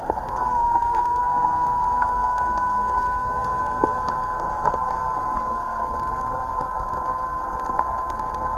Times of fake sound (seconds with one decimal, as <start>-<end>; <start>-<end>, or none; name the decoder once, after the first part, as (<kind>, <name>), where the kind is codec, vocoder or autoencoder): 0.0-8.6 (codec, SNAC)